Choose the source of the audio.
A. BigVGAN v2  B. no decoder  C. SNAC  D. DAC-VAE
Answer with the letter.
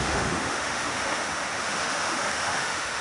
D